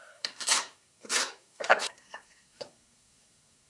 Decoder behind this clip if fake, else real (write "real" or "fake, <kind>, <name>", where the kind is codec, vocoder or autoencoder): fake, codec, SNAC